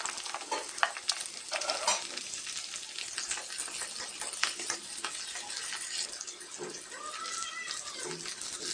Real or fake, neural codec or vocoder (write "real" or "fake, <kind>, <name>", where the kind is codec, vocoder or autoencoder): real